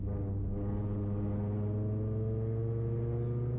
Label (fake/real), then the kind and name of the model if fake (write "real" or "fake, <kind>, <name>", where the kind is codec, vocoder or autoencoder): real